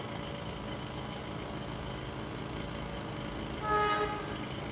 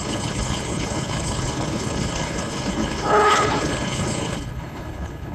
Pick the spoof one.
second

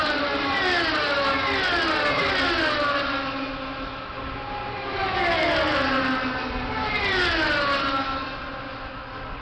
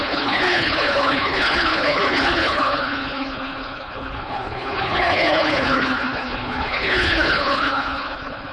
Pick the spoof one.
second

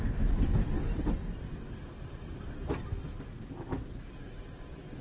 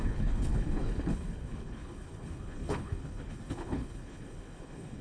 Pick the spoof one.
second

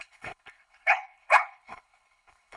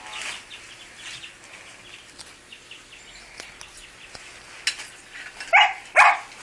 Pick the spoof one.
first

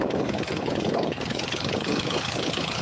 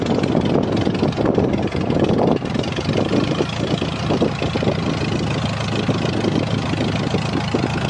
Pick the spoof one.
first